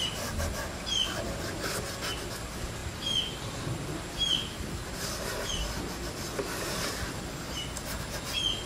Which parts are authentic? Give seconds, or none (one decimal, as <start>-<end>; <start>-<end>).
0.0-8.7